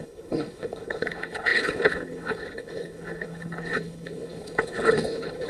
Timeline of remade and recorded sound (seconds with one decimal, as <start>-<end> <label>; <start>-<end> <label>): 0.0-5.5 remade

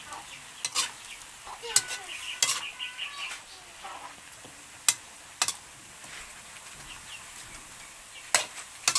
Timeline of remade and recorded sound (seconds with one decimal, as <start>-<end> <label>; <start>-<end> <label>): 0.0-9.0 recorded

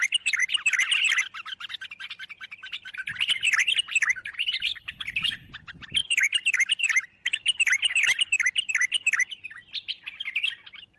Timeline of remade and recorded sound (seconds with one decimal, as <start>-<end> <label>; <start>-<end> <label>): 0.0-4.7 recorded; 4.7-5.5 remade; 5.5-11.0 recorded

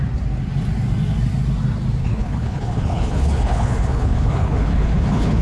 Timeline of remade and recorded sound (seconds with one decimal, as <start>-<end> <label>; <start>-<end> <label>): 0.0-2.0 recorded; 2.0-5.4 remade

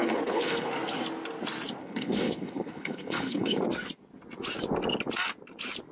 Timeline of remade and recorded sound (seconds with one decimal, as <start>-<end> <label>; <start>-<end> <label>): 0.0-0.7 remade; 0.7-1.8 recorded; 1.8-3.6 remade; 3.6-5.9 recorded

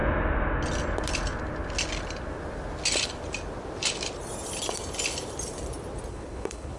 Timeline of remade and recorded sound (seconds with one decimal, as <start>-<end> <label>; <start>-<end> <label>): 0.0-6.1 recorded; 6.1-6.8 remade

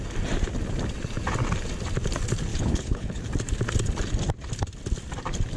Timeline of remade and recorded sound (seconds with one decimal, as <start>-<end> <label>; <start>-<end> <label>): 0.0-2.5 recorded; 2.5-3.2 remade; 3.2-5.6 recorded